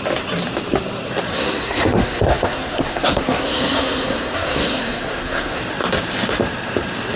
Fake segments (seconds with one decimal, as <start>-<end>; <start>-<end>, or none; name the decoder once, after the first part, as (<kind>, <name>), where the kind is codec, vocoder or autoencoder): 1.3-5.6 (codec, SNAC)